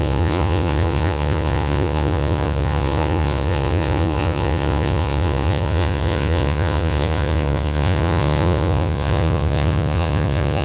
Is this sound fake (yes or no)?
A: yes